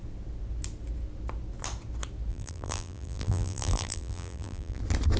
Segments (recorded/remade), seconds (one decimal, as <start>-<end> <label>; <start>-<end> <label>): 0.0-2.3 recorded; 2.3-4.8 remade; 4.8-5.2 recorded